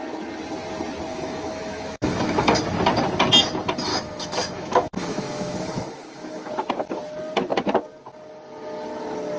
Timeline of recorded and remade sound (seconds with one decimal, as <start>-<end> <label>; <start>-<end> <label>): 0.0-1.1 recorded; 1.1-2.6 remade; 2.6-3.9 recorded; 3.9-6.5 remade; 6.5-9.4 recorded

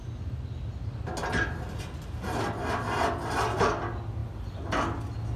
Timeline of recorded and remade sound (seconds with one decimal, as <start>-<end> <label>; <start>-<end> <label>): 0.0-5.4 recorded

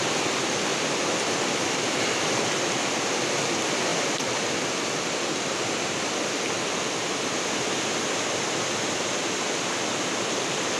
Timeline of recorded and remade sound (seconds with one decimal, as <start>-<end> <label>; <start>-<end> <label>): 0.0-10.8 recorded

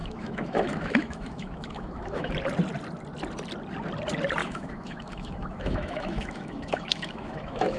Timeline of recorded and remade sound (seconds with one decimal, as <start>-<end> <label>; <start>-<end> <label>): 0.0-2.3 remade; 2.3-4.4 recorded; 4.4-7.8 remade

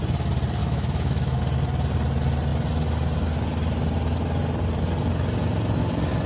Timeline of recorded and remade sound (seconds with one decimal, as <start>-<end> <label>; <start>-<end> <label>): 0.0-0.6 recorded; 0.6-1.4 remade; 1.4-6.3 recorded

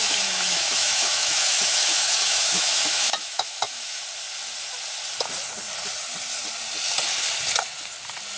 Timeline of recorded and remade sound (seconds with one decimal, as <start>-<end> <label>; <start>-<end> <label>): 0.0-4.0 remade; 4.0-8.4 recorded